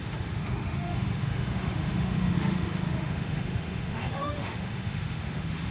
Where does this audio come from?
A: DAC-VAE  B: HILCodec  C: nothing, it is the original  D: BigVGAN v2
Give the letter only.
A